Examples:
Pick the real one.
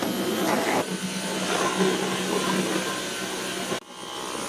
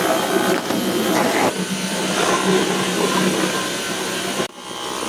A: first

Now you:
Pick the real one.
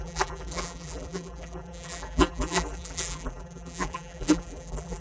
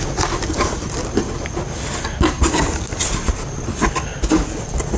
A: second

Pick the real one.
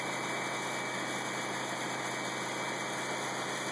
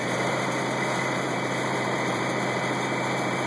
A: first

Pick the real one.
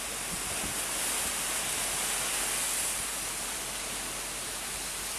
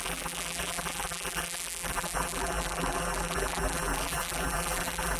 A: first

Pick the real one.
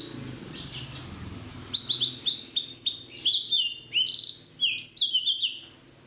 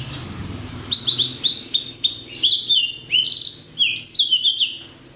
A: first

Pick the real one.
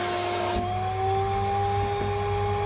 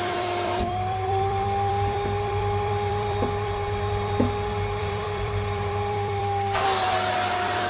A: first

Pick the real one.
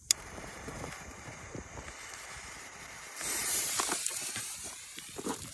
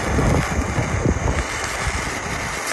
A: second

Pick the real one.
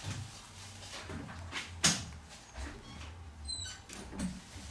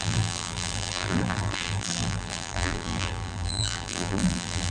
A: first